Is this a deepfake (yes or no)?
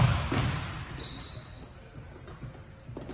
no